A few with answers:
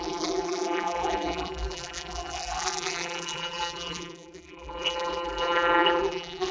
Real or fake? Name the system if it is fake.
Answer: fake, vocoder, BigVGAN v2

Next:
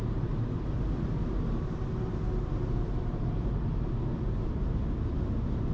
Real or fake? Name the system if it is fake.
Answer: real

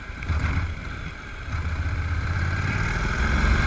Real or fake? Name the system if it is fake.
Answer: fake, vocoder, BigVGAN v2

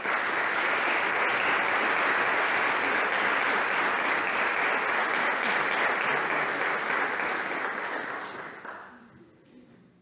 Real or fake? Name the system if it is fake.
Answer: real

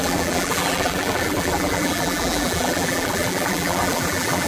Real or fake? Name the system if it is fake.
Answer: fake, vocoder, BigVGAN v2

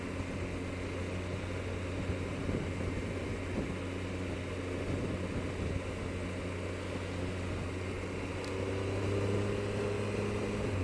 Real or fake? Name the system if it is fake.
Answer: real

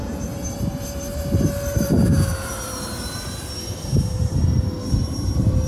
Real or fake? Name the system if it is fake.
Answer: fake, vocoder, BigVGAN v2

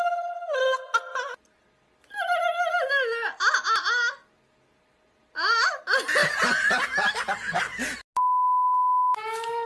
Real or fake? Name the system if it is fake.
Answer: real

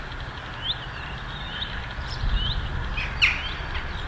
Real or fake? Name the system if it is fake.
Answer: real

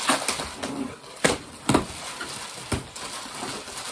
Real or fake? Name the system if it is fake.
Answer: real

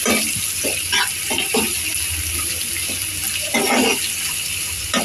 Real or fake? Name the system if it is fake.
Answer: real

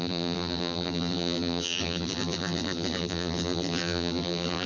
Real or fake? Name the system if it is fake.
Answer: fake, vocoder, BigVGAN v2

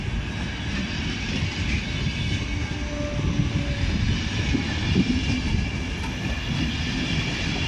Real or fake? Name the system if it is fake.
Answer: real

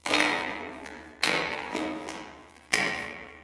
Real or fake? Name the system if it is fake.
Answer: fake, vocoder, BigVGAN v2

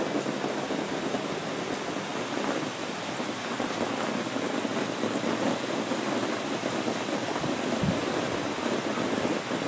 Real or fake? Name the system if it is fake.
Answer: real